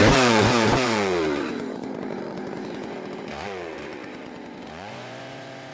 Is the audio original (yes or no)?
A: no